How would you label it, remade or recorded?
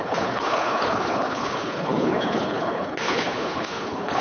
remade